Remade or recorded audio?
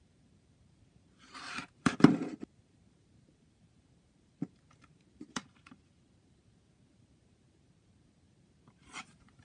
remade